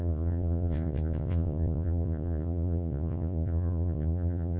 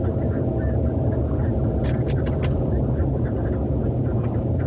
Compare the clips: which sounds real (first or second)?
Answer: second